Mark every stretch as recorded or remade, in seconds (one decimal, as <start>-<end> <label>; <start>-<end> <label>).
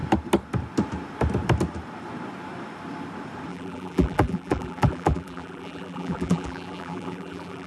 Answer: 0.0-3.5 recorded; 3.5-7.7 remade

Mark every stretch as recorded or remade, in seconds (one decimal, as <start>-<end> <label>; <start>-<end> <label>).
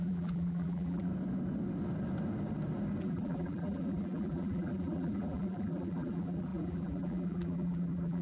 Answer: 0.0-1.1 remade; 1.1-3.0 recorded; 3.0-8.2 remade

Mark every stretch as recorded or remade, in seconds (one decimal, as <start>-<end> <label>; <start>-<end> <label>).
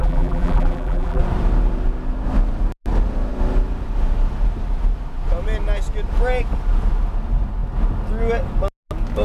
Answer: 0.0-1.2 remade; 1.2-9.2 recorded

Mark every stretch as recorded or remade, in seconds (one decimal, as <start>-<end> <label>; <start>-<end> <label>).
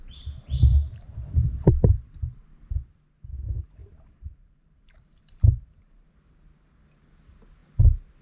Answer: 0.0-0.7 recorded; 0.7-1.7 remade; 1.7-3.8 recorded; 3.8-6.1 remade; 6.1-8.2 recorded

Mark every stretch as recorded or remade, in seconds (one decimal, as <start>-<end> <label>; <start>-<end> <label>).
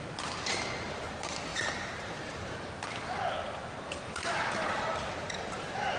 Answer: 0.0-1.5 recorded; 1.5-2.4 remade; 2.4-3.6 recorded; 3.6-4.4 remade; 4.4-6.0 recorded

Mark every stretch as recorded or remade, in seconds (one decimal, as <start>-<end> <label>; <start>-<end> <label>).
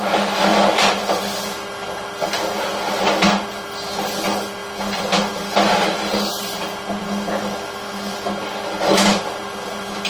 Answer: 0.0-0.5 recorded; 0.5-2.0 remade; 2.0-6.3 recorded; 6.3-7.0 remade; 7.0-10.1 recorded